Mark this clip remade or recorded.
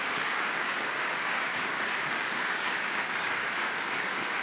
remade